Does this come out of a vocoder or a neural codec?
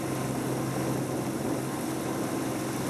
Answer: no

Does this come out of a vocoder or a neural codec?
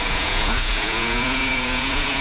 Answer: yes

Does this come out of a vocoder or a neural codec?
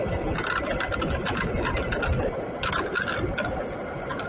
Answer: no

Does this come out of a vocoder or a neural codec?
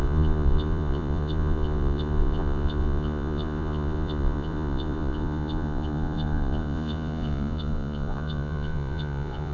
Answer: yes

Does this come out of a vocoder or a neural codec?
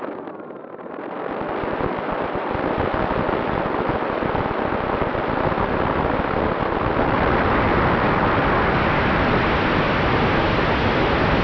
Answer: no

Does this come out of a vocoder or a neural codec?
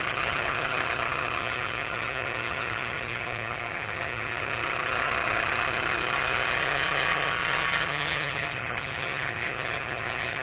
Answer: yes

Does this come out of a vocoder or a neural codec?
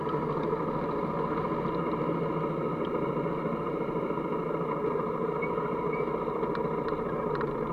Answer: no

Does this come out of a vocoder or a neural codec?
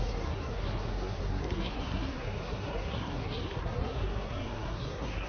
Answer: yes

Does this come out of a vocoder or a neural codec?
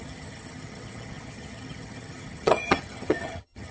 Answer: yes